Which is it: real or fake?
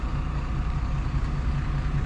real